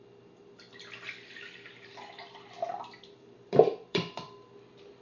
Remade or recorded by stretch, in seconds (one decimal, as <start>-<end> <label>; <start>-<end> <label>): 0.0-1.9 recorded; 1.9-5.0 remade